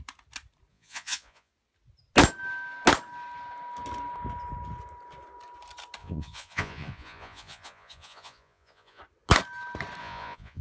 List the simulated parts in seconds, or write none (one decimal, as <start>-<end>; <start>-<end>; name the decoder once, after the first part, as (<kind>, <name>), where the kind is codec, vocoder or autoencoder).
0.7-1.5 (vocoder, Vocos); 6.0-9.0; 10.0-10.6